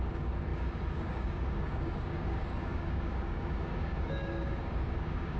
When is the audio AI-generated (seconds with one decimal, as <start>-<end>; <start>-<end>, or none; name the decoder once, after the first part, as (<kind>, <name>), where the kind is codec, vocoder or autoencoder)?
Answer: 0.0-5.4 (codec, DAC)